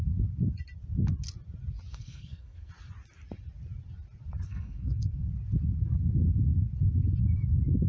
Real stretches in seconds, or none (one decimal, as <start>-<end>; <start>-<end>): 0.0-1.9; 2.7-4.5; 5.3-7.9